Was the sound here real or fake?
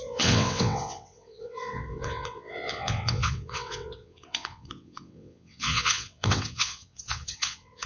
fake